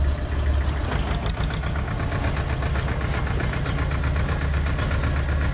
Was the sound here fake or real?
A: real